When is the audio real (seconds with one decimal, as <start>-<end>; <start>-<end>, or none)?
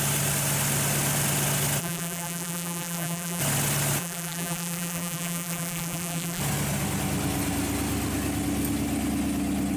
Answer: 0.0-1.8; 3.4-4.0; 6.4-9.8